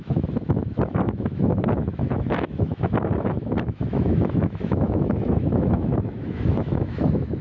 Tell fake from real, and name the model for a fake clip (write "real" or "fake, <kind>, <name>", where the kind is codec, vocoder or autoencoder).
fake, autoencoder, DAC-VAE